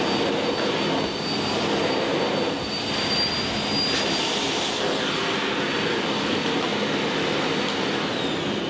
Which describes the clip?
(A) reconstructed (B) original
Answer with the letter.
B